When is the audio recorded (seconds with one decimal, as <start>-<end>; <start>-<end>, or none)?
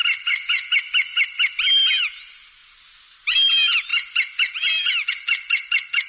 0.0-6.1